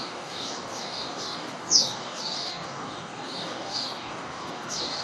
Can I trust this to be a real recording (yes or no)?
no